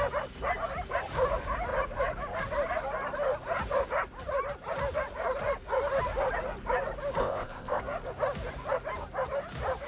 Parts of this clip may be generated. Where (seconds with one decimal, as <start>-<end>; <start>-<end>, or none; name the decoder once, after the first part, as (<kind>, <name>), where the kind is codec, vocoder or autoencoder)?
7.2-7.8 (codec, ZipCodec)